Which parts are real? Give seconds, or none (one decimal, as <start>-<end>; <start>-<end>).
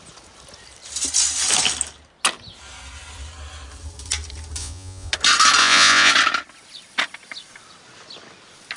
0.0-4.6; 5.1-5.6; 6.1-8.8